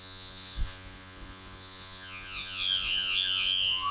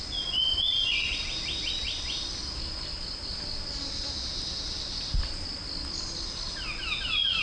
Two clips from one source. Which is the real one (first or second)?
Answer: second